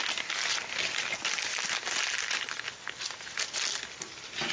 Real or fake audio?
real